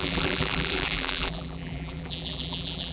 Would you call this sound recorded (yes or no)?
no